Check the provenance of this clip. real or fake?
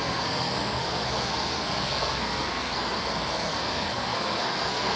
fake